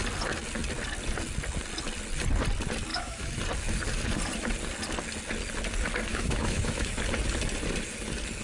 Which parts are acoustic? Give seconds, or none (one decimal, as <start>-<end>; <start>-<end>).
0.0-2.9; 3.4-6.1; 6.9-8.4